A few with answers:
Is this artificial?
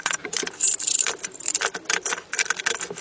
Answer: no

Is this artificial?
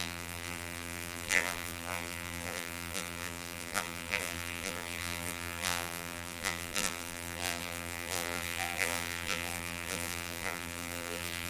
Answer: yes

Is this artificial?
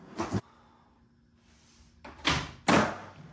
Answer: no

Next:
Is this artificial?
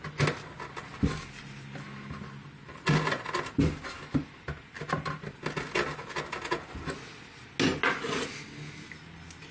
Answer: no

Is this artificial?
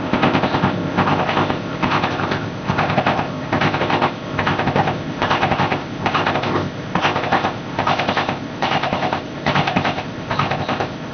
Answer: yes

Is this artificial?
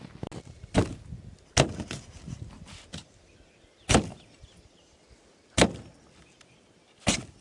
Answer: no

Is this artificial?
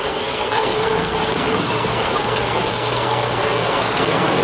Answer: yes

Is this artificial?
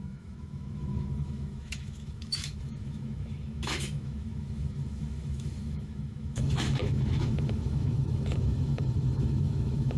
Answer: yes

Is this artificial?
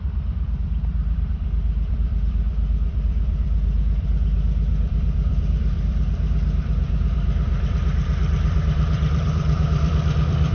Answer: yes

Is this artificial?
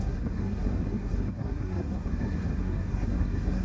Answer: yes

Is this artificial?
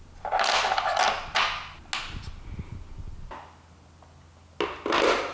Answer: no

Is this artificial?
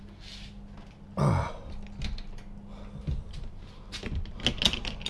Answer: no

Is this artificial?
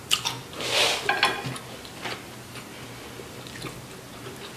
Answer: no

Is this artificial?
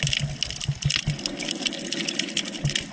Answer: no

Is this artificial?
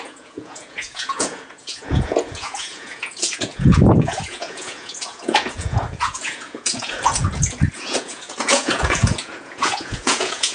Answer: yes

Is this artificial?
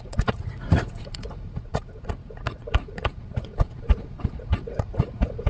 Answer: yes